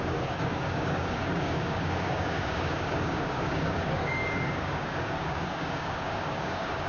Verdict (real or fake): fake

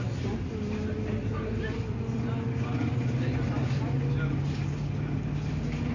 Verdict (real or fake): real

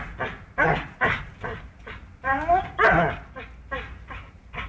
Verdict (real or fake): real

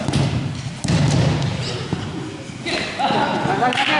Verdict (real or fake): real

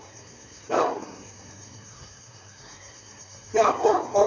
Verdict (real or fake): fake